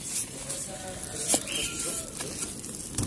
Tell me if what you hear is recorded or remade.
recorded